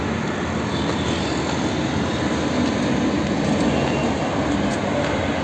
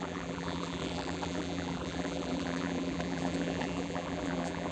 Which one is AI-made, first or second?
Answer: second